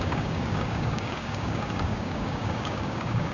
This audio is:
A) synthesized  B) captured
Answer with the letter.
A